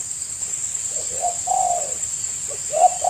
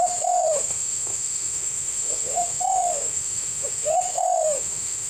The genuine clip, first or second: first